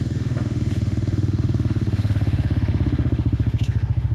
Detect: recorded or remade remade